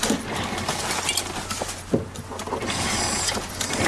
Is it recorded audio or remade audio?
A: recorded